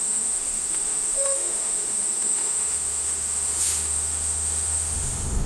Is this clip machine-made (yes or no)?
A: yes